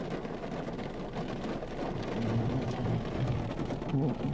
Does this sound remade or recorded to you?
recorded